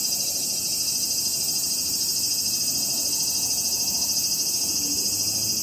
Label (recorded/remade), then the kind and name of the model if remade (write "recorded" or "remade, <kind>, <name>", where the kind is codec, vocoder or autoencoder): recorded